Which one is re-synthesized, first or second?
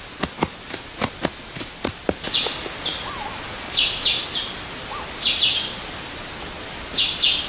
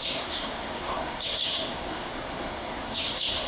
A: second